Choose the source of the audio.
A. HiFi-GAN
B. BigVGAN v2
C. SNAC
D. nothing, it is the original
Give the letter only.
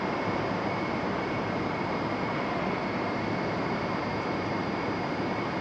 B